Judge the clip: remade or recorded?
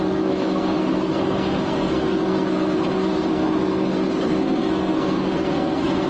remade